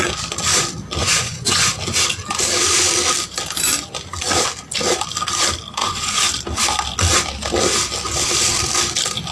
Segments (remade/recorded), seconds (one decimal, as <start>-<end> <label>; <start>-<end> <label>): 0.0-1.0 recorded; 1.0-1.7 remade; 1.7-5.8 recorded; 5.8-6.3 remade; 6.3-9.3 recorded